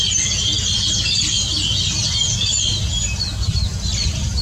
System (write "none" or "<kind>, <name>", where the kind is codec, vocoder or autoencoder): none